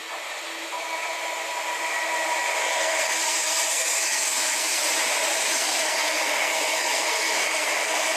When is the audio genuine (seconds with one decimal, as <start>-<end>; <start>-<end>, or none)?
0.0-2.6; 4.8-5.5